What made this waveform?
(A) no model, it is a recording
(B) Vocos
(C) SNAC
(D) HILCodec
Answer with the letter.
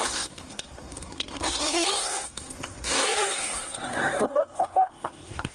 C